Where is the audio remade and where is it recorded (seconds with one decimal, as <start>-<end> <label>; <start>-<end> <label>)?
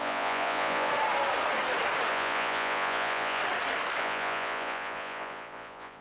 0.0-0.9 remade; 0.9-2.1 recorded; 2.1-3.4 remade; 3.4-4.0 recorded; 4.0-6.0 remade